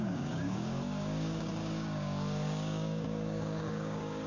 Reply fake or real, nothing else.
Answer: fake